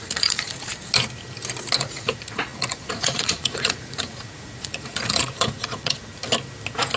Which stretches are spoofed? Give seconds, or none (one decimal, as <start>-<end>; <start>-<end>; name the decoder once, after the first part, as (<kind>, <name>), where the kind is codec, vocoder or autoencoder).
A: 0.0-0.7 (vocoder, Vocos); 1.8-6.2